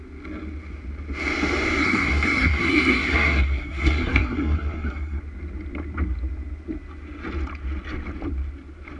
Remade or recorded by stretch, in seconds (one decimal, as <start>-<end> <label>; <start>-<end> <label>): 0.0-1.8 recorded; 1.8-5.2 remade; 5.2-9.0 recorded